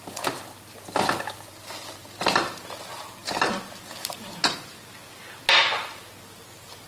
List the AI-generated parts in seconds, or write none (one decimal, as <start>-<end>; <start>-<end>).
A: none

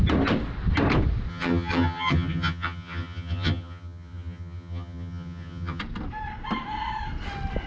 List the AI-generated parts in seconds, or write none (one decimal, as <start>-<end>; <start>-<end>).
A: 1.3-5.8

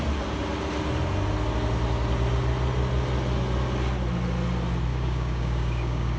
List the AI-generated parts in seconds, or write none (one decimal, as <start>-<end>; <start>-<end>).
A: 4.9-6.2

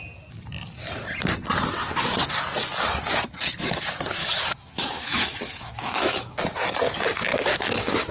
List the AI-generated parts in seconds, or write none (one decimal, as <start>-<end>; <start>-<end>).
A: 4.2-6.4; 7.3-8.1

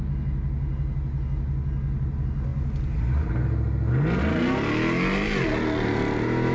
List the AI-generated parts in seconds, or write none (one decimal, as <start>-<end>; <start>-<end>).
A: none

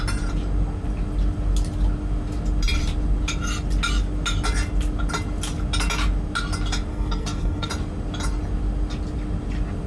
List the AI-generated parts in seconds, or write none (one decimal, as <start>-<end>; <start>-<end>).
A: 6.9-7.7

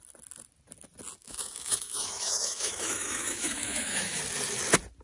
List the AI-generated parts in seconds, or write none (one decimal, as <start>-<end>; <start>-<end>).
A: 1.2-4.2

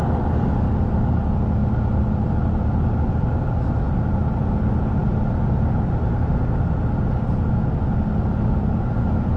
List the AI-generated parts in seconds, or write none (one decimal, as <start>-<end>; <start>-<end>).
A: none